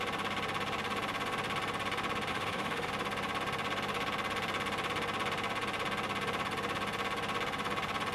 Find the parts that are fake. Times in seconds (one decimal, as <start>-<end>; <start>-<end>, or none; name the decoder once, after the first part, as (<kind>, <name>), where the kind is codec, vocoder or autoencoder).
2.3-2.9 (autoencoder, DAC-VAE)